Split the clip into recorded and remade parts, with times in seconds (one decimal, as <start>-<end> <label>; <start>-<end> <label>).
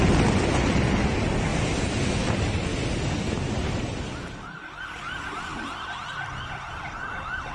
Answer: 0.0-1.5 recorded; 1.5-2.1 remade; 2.1-2.7 recorded; 2.7-4.8 remade; 4.8-7.5 recorded